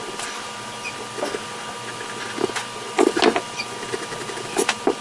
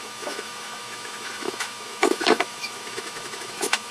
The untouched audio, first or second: first